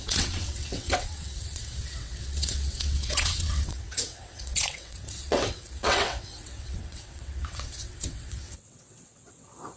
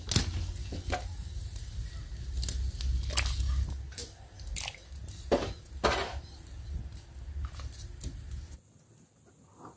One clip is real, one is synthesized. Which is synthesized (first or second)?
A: first